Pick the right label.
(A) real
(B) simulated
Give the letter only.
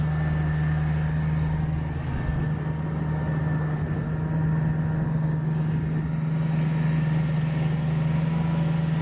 A